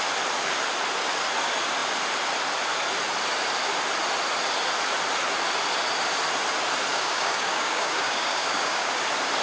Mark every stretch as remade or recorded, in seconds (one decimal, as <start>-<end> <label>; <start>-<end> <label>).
0.0-6.9 recorded; 6.9-8.9 remade; 8.9-9.4 recorded